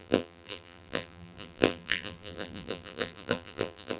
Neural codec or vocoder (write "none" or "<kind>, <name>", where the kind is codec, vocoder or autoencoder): vocoder, BigVGAN v2